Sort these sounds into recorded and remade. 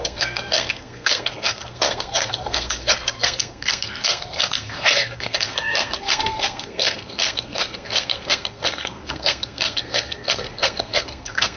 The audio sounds remade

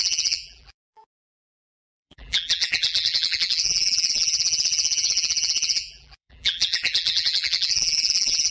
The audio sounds remade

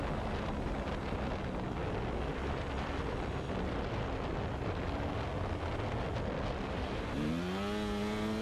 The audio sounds recorded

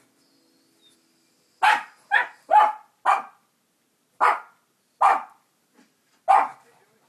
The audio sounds recorded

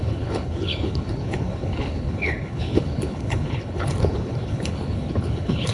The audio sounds remade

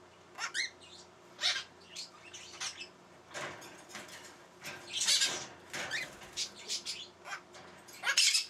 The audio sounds recorded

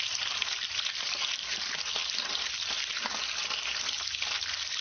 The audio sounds recorded